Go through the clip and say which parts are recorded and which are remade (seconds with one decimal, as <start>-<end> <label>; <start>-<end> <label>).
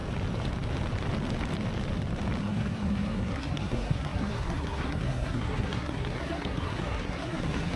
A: 0.0-2.4 recorded; 2.4-7.8 remade